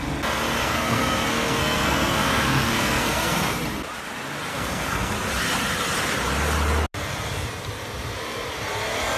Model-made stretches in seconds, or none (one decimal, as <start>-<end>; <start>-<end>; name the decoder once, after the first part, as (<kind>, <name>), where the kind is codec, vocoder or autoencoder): 0.6-3.6 (codec, SNAC); 4.5-5.1